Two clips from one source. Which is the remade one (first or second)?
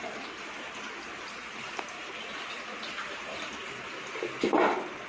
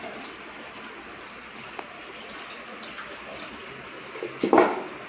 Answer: first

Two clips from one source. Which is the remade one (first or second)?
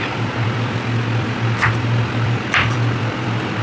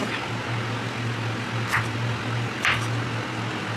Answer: first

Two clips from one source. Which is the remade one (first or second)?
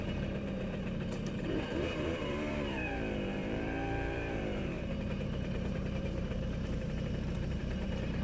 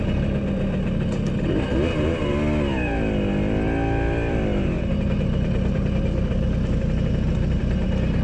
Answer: first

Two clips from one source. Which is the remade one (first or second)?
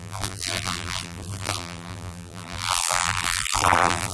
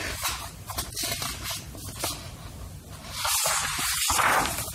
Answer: first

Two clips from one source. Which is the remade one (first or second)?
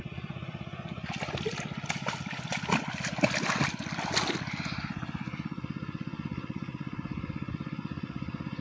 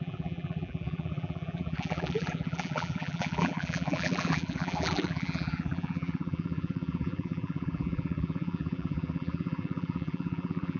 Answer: second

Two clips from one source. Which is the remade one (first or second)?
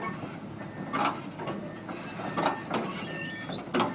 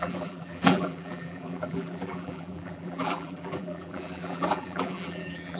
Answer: second